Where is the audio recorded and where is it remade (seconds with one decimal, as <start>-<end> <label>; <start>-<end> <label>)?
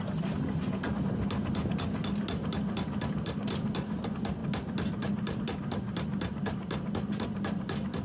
0.0-8.0 recorded